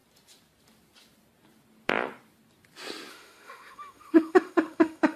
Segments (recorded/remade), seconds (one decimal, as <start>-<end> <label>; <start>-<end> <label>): 0.0-3.1 recorded; 3.1-5.2 remade